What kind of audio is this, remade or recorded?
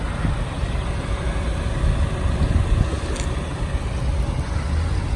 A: recorded